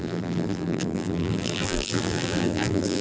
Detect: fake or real fake